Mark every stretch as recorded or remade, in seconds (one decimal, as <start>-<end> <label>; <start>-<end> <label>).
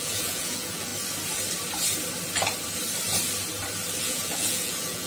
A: 0.0-0.9 remade; 0.9-4.0 recorded; 4.0-5.1 remade